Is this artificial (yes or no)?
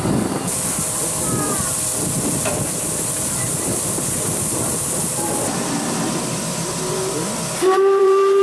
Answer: yes